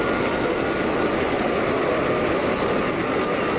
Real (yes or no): yes